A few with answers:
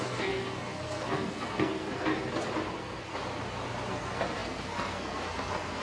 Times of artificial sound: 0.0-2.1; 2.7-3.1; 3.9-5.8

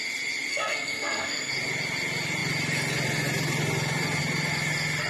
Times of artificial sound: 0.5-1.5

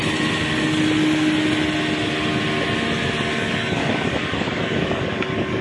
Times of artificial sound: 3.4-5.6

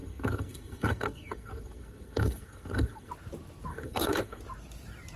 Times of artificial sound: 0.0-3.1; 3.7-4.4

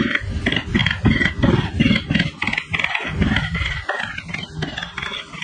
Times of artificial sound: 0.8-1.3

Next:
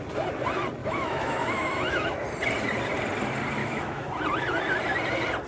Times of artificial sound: 0.8-2.2; 3.6-4.1

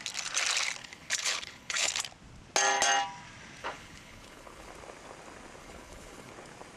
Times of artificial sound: 0.8-1.9; 3.6-4.7; 5.6-6.3